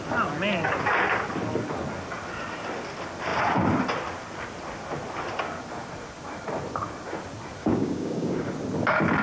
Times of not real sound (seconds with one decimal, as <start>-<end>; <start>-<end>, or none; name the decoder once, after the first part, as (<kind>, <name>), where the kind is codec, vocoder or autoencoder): 7.6-8.5 (codec, DAC)